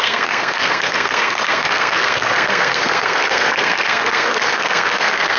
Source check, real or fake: fake